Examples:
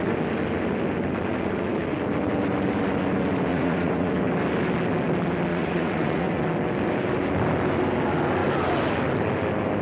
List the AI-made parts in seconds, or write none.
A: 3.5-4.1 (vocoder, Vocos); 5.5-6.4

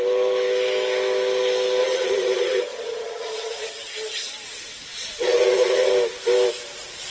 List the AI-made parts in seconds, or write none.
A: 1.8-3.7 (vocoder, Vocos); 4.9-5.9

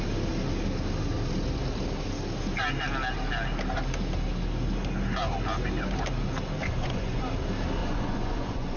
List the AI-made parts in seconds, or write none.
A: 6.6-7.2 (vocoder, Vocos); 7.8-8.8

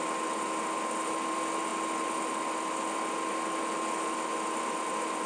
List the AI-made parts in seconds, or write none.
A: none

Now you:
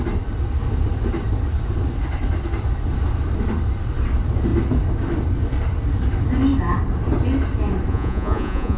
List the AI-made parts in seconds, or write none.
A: 7.9-8.8 (vocoder, Vocos)

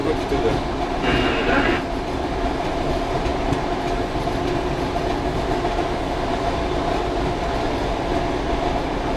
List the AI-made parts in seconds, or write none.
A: none